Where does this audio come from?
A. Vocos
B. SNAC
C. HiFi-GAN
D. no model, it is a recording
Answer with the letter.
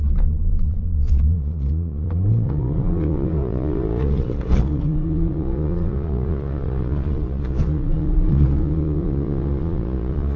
A